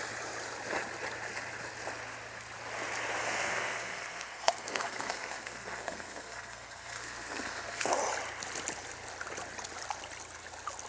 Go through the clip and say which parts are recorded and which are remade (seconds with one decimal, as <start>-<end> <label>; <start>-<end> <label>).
0.0-3.2 recorded; 3.2-7.9 remade; 7.9-10.9 recorded